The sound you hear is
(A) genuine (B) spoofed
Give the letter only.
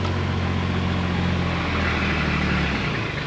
A